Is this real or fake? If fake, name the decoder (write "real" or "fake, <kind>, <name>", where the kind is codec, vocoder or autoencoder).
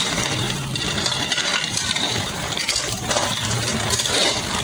fake, vocoder, BigVGAN v2